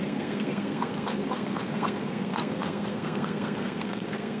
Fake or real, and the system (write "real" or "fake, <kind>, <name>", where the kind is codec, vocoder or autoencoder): fake, codec, SNAC